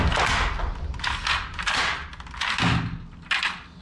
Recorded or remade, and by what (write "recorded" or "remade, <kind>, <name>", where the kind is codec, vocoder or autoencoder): recorded